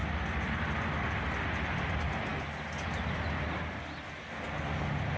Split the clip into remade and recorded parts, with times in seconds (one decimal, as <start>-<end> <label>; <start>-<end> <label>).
0.0-5.2 recorded